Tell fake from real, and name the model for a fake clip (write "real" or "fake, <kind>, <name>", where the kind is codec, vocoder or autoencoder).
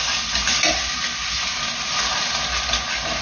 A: real